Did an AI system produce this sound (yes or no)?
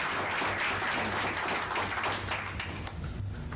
no